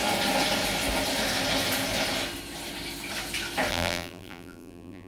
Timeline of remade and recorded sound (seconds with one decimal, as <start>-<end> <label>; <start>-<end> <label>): 0.0-3.7 recorded; 3.7-5.1 remade